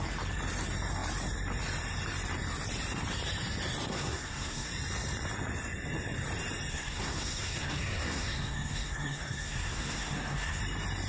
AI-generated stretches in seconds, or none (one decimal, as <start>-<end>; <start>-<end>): 3.9-4.7; 6.7-10.6